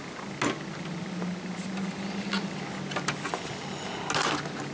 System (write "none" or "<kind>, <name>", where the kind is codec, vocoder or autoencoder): none